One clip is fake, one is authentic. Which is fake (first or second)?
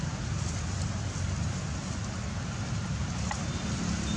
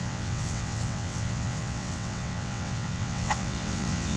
second